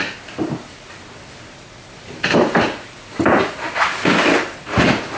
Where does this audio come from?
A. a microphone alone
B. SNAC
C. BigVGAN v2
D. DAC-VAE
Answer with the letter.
C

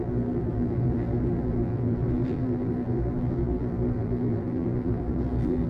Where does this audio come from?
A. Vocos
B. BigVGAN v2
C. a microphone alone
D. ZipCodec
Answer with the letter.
B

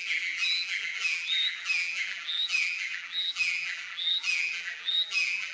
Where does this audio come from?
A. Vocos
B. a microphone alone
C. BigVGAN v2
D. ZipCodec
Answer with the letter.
C